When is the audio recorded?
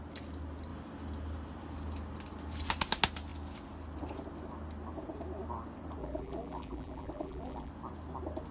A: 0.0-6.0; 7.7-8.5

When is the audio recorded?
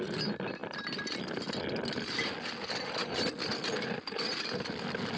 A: 0.6-3.7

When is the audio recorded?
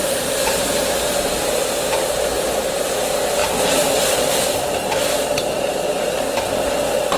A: 0.9-3.4; 6.1-7.2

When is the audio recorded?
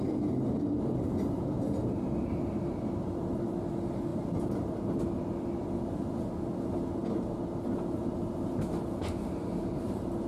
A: 0.0-10.3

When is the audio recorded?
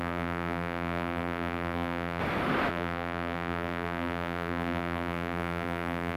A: 2.2-2.7